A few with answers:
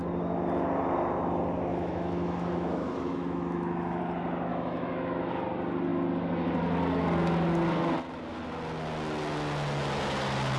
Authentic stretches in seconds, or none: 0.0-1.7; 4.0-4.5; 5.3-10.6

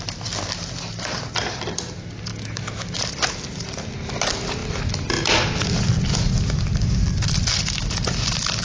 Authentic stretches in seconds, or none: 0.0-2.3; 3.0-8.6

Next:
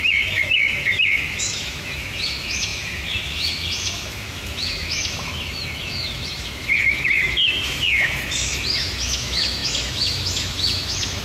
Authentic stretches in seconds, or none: none

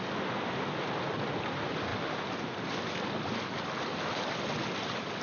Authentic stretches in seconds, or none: 0.0-5.2

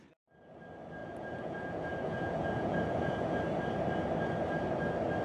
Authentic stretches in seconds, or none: 0.0-1.0; 3.4-5.2

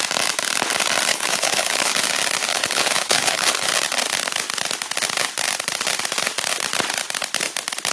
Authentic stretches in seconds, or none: 0.0-1.1; 1.9-2.5; 3.7-7.9

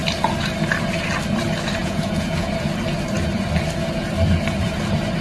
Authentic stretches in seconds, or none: 0.0-1.8; 2.5-5.2